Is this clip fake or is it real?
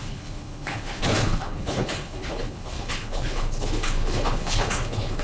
fake